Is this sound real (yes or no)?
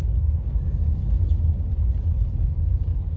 yes